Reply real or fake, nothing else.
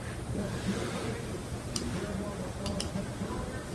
real